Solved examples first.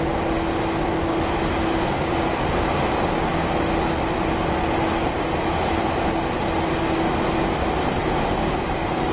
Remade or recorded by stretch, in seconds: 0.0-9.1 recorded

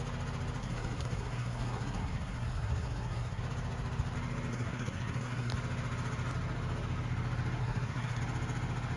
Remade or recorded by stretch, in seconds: 0.0-0.6 recorded; 0.6-3.4 remade; 3.4-4.5 recorded; 4.5-5.5 remade; 5.5-7.6 recorded; 7.6-8.2 remade; 8.2-9.0 recorded

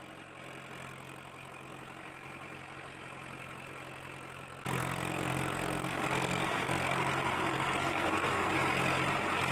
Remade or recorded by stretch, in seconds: 0.0-4.8 recorded; 4.8-8.5 remade; 8.5-9.5 recorded

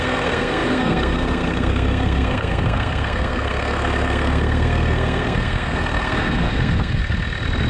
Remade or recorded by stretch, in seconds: 0.0-7.0 remade; 7.0-7.7 recorded

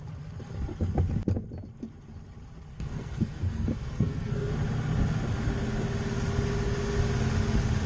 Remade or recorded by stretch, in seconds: 0.0-2.7 recorded; 2.7-4.5 remade; 4.5-7.9 recorded

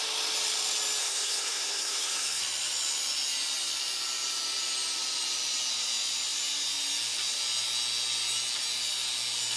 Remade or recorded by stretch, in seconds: 0.0-1.0 recorded; 1.0-2.4 remade; 2.4-9.6 recorded